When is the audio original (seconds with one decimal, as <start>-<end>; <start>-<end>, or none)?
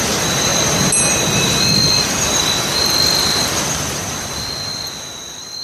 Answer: 0.0-5.6